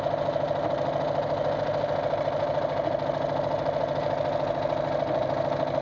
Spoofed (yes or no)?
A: no